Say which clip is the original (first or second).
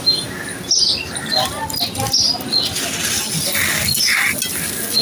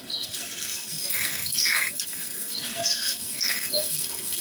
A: first